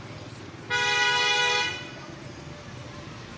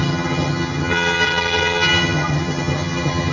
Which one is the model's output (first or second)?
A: second